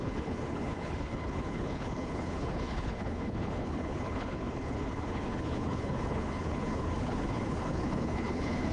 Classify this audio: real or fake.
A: fake